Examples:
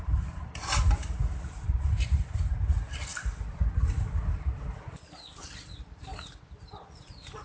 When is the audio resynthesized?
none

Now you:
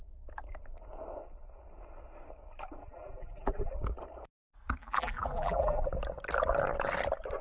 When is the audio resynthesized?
2.8-3.7 (vocoder, BigVGAN v2); 4.8-5.9

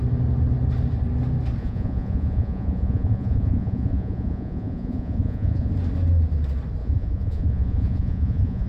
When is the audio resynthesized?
1.6-5.7 (vocoder, Vocos); 6.8-8.7

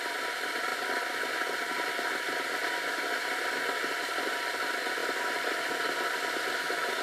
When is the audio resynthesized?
5.0-5.7 (vocoder, BigVGAN v2)

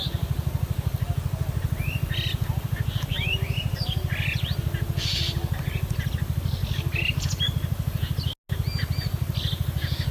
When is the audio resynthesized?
none

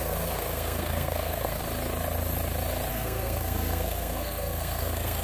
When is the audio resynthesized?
0.0-1.6 (codec, SNAC); 2.9-5.2

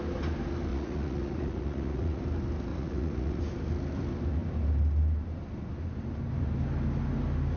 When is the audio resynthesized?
0.7-2.2 (vocoder, Vocos); 2.7-3.4